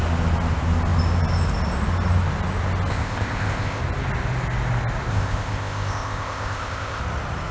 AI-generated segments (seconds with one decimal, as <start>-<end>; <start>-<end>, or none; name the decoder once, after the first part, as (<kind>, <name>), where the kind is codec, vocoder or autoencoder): 2.9-3.8 (codec, ZipCodec); 5.1-7.0